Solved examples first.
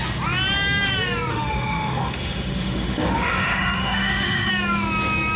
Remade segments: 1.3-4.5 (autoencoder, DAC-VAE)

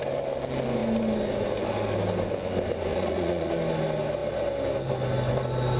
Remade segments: 2.9-3.5 (vocoder, Vocos)

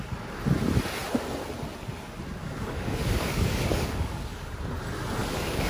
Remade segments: 2.4-4.5 (codec, DAC); 5.2-5.7

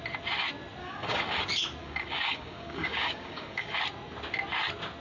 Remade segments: 0.8-1.4 (codec, DAC); 1.8-3.8

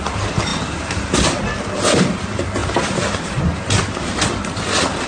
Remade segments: none

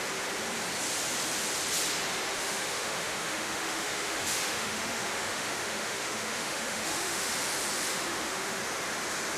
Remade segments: 2.3-7.3 (autoencoder, DAC-VAE); 7.9-8.6

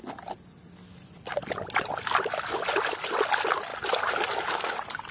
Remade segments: none